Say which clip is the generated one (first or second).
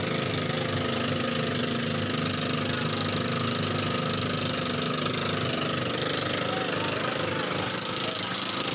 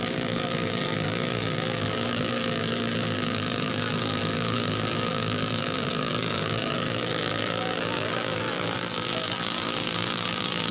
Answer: second